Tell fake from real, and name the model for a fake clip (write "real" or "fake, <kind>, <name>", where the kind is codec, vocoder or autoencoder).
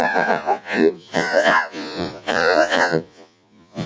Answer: fake, vocoder, Vocos